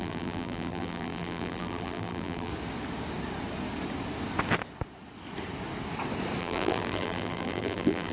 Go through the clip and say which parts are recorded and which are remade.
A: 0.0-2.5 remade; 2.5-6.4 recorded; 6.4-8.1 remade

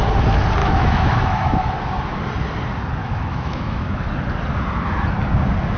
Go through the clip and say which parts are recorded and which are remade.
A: 0.0-0.6 recorded; 0.6-1.7 remade; 1.7-3.0 recorded; 3.0-4.1 remade; 4.1-5.8 recorded

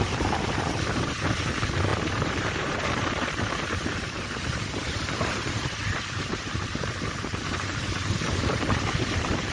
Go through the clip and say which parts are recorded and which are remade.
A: 0.0-9.5 remade

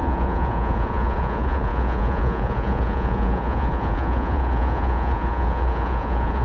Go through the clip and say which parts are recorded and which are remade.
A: 0.0-6.4 remade

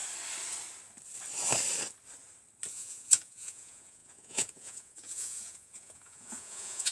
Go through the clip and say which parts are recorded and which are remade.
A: 0.0-2.7 recorded; 2.7-6.9 remade

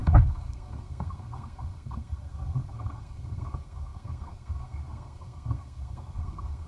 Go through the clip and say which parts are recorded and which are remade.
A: 0.0-6.7 remade

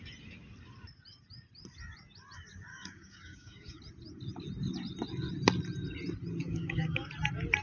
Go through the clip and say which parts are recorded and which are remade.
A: 0.0-2.7 recorded; 2.7-3.8 remade; 3.8-6.4 recorded; 6.4-7.1 remade; 7.1-7.6 recorded

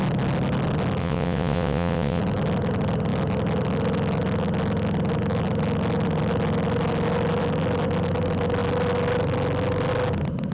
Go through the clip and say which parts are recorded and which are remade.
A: 0.0-1.0 recorded; 1.0-2.2 remade; 2.2-10.5 recorded